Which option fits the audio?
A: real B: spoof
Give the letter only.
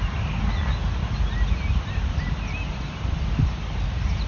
A